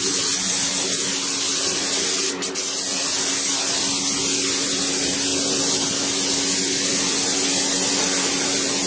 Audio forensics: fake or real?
real